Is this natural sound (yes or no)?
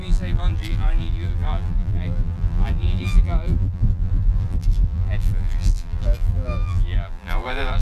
no